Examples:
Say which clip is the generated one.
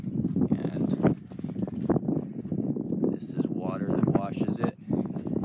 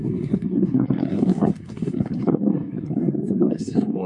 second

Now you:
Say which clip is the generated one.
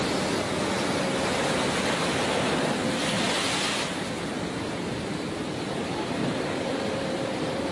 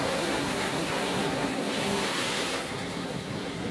second